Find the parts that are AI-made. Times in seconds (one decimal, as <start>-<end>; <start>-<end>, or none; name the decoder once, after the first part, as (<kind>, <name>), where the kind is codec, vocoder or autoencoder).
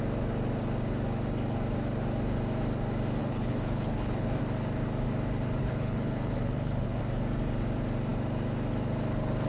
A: 3.2-4.4 (codec, HILCodec); 5.6-7.0